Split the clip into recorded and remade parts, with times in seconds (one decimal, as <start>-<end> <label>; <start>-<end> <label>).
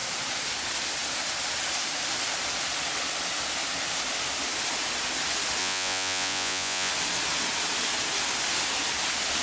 0.0-5.6 recorded; 5.6-6.9 remade; 6.9-9.4 recorded